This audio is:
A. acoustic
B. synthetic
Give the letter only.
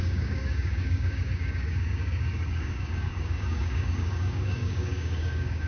B